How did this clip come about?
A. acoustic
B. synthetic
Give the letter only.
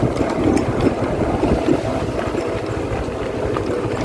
A